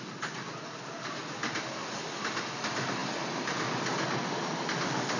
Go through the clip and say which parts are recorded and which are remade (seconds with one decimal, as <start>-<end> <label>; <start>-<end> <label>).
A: 0.0-5.2 recorded